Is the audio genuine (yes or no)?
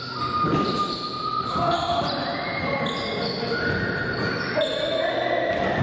yes